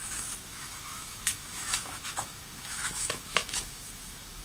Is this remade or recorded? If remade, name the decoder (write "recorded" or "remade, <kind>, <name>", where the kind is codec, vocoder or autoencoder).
remade, autoencoder, DAC-VAE